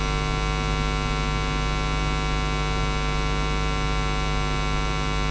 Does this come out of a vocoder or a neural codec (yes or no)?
no